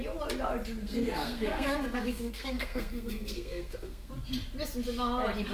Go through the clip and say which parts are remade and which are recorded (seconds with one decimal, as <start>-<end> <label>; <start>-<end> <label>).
0.0-0.8 recorded; 0.8-4.1 remade; 4.1-5.5 recorded